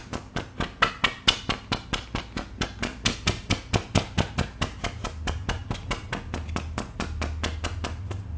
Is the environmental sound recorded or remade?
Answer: recorded